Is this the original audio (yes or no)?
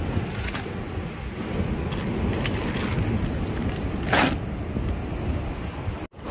yes